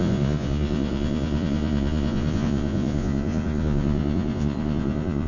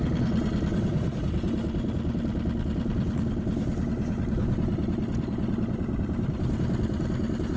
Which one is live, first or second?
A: second